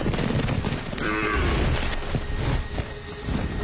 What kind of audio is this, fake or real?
real